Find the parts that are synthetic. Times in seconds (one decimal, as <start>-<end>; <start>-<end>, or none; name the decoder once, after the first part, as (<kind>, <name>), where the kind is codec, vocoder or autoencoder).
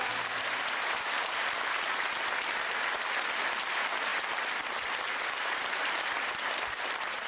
none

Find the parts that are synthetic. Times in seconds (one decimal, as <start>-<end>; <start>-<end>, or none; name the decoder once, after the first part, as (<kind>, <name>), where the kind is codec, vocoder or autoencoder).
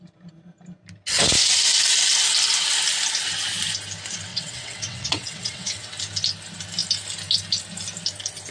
4.3-5.9 (vocoder, WaveNeXt)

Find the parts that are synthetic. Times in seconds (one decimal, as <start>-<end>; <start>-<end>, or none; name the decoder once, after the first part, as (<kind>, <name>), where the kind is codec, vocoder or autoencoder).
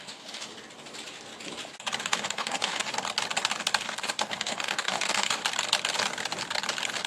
0.0-0.5 (codec, DAC); 2.0-2.9; 3.8-5.4